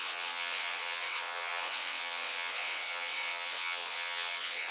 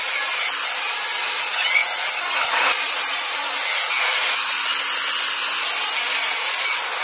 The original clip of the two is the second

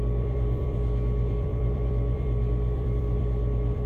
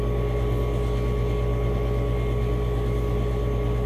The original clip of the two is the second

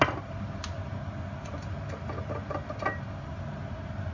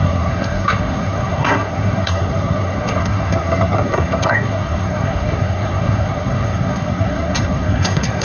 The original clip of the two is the first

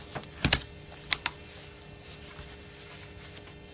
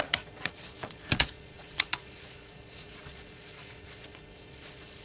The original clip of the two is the first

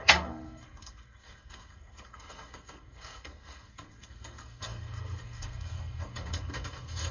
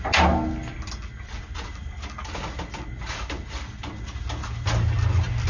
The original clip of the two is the second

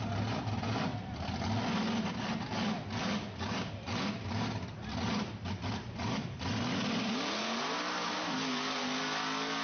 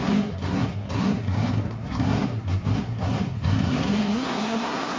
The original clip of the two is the first